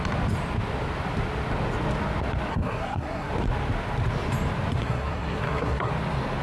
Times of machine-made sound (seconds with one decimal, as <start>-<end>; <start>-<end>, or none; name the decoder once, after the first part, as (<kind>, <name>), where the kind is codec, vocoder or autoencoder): 2.5-3.3 (codec, SNAC); 4.8-5.9